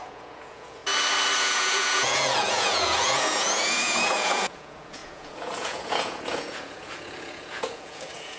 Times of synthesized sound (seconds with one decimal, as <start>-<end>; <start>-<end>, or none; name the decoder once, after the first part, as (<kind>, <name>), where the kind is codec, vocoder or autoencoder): 0.0-0.8 (vocoder, Vocos); 1.4-8.4